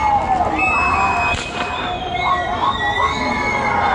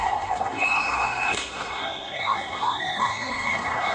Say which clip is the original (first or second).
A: first